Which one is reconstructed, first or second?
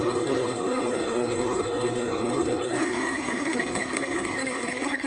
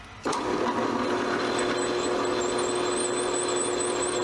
first